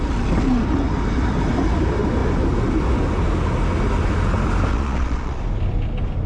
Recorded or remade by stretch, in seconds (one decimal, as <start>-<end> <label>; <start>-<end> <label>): 0.0-4.7 recorded; 4.7-5.4 remade; 5.4-6.3 recorded